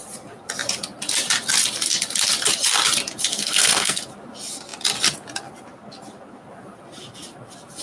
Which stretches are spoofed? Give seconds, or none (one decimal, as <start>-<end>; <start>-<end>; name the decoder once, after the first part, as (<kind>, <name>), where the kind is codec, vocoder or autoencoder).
3.3-4.0 (codec, SNAC)